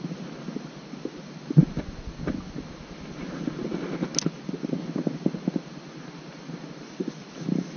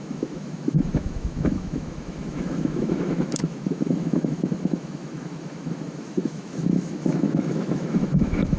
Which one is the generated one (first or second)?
second